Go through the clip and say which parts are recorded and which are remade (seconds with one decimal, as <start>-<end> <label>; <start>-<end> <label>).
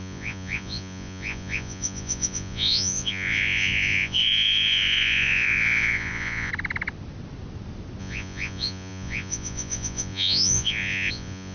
0.0-6.5 remade; 6.5-8.0 recorded; 8.0-11.5 remade